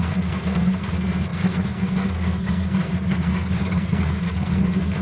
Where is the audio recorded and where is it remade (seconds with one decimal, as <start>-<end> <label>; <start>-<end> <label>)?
0.0-5.0 remade